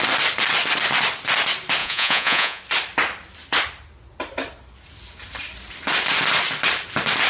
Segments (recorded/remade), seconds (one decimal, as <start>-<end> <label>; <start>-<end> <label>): 0.0-1.8 recorded; 1.8-2.6 remade; 2.6-7.3 recorded